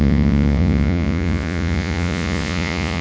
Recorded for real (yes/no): no